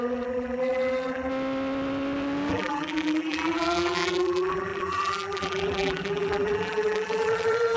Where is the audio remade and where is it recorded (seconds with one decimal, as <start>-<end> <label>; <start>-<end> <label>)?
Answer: 0.0-1.3 remade; 1.3-2.5 recorded; 2.5-7.8 remade